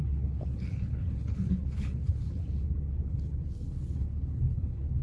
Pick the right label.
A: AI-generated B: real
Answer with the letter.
A